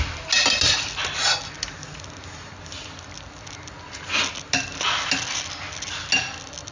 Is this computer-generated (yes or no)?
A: no